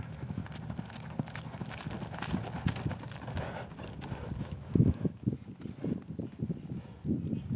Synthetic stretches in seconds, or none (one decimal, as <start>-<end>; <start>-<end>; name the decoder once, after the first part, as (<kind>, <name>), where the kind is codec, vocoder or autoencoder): 0.0-0.4 (autoencoder, DAC-VAE); 4.4-5.4